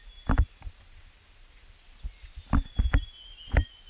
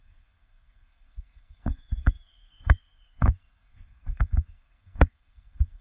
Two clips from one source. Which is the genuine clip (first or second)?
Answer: first